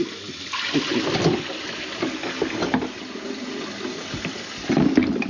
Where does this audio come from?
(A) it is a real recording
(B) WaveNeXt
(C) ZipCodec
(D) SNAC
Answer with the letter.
A